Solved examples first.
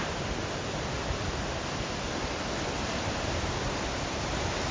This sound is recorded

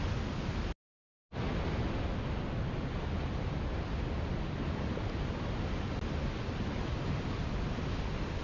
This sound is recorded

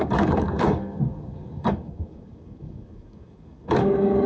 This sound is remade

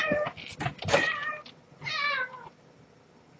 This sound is recorded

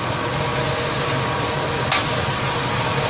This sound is recorded